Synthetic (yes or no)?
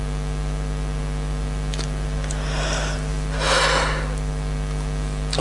no